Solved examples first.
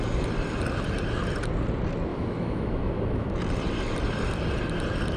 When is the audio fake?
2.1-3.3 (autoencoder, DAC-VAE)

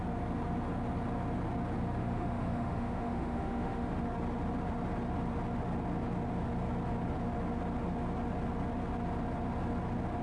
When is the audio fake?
2.0-3.9 (autoencoder, DAC-VAE)

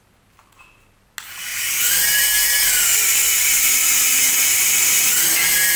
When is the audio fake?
none

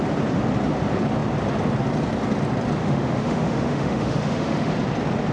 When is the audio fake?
2.8-4.7 (autoencoder, DAC-VAE)